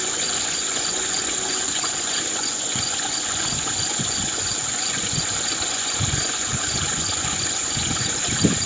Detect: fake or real fake